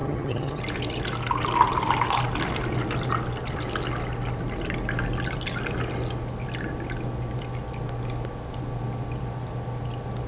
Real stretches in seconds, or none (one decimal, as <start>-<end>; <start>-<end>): 0.6-10.3